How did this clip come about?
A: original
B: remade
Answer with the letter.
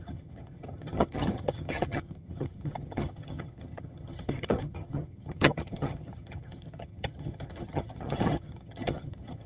B